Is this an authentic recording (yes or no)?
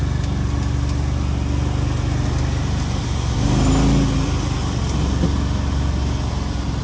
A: yes